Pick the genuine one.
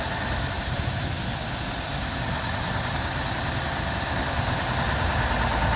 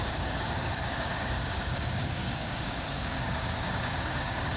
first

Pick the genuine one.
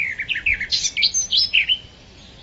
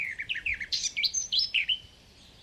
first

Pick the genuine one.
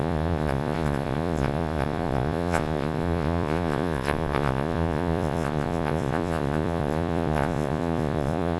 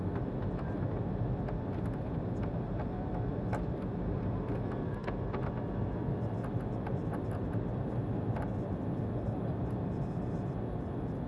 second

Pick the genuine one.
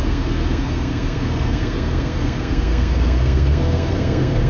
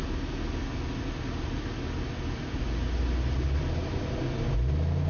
second